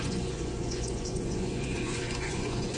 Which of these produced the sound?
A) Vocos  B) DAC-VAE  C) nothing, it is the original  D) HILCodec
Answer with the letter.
A